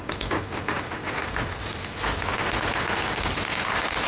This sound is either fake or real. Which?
real